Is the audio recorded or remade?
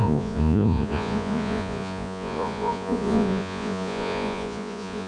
remade